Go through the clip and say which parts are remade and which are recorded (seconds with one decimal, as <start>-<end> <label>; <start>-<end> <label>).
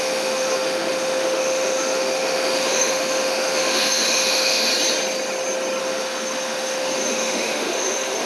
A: 0.0-4.7 remade; 4.7-5.8 recorded; 5.8-8.3 remade